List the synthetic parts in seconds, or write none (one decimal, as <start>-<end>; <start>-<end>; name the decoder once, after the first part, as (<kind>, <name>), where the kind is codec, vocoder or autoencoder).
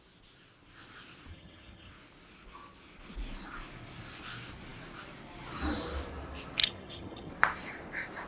1.3-1.9 (vocoder, HiFi-GAN); 6.6-7.3